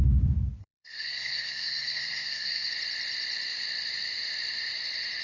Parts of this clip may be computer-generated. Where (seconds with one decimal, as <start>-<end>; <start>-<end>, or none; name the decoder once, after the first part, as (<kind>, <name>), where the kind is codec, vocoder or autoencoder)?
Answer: 0.6-2.7 (codec, SNAC)